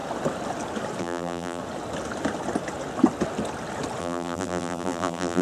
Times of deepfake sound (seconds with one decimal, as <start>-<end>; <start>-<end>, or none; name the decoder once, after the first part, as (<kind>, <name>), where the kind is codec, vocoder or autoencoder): 1.0-1.6 (vocoder, BigVGAN v2); 4.0-5.4